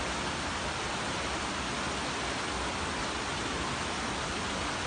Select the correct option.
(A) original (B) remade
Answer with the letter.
A